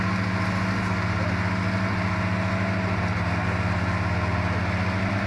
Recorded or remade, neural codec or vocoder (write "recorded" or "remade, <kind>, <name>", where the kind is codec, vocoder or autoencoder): recorded